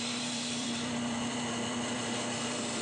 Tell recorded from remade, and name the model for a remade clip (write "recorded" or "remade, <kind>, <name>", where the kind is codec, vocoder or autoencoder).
remade, vocoder, BigVGAN v2